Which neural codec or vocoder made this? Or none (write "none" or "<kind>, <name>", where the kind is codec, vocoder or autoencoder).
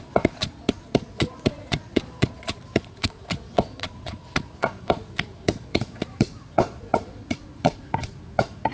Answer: vocoder, Vocos